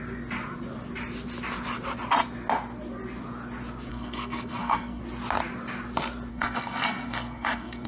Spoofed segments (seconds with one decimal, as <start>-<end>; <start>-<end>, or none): 3.9-5.0; 6.3-7.9